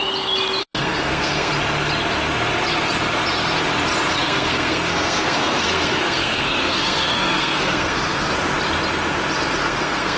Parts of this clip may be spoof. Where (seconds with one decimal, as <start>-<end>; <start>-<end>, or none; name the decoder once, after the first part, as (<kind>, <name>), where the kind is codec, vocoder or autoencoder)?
0.6-1.5 (codec, SNAC); 4.2-8.3; 9.6-10.2